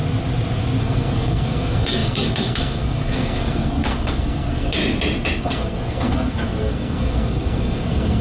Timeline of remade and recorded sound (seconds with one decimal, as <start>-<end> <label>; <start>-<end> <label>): 0.0-0.8 recorded; 0.8-4.8 remade; 4.8-5.4 recorded; 5.4-8.2 remade